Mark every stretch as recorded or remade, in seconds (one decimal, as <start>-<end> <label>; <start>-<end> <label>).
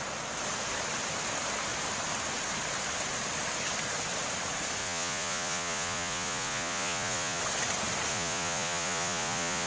0.0-4.8 recorded; 4.8-7.4 remade; 7.4-8.1 recorded; 8.1-9.7 remade